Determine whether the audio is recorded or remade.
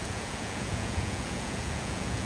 remade